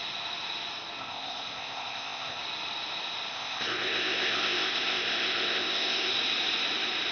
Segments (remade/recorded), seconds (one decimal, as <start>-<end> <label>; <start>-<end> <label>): 0.0-1.0 recorded; 1.0-2.4 remade; 2.4-3.3 recorded; 3.3-6.1 remade; 6.1-7.1 recorded